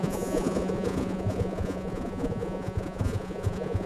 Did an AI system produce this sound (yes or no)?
yes